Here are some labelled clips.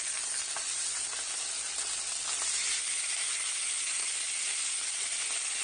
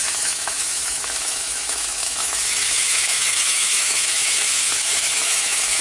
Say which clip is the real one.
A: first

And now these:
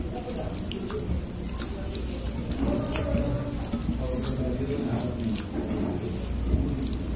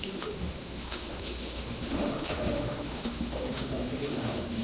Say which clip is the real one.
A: first